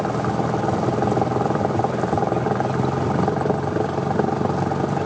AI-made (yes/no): no